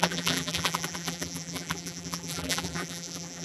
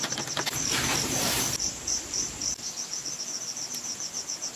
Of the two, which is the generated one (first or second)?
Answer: first